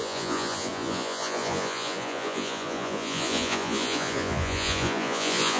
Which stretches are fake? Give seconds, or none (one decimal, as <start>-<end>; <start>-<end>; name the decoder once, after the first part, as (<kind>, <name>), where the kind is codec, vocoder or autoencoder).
0.0-5.6 (vocoder, Vocos)